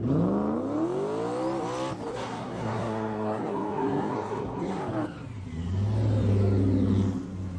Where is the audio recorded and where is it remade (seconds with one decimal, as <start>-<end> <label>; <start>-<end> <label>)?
0.0-2.1 recorded; 2.1-4.8 remade; 4.8-7.6 recorded